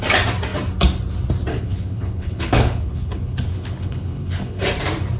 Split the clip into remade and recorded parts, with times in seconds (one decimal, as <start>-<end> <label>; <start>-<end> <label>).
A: 0.0-1.5 recorded; 1.5-4.6 remade; 4.6-5.2 recorded